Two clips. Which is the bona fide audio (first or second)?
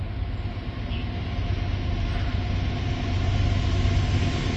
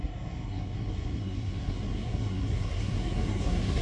first